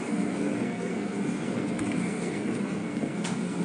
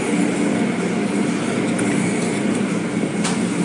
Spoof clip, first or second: first